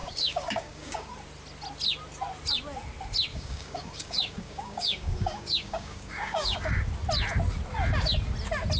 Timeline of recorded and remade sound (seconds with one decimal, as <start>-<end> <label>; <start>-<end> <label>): 0.0-1.1 remade; 1.1-3.3 recorded; 3.3-6.8 remade; 6.8-8.8 recorded